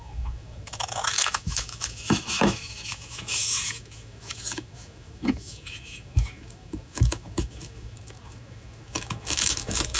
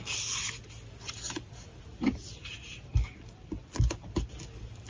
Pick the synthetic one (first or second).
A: first